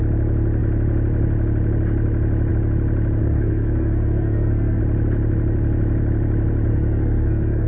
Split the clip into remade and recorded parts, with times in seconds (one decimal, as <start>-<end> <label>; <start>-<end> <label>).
0.0-3.2 recorded; 3.2-4.8 remade; 4.8-6.7 recorded; 6.7-7.7 remade